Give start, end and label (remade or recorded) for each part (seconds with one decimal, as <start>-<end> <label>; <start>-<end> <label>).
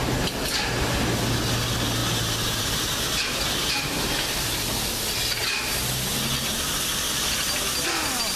0.0-8.4 recorded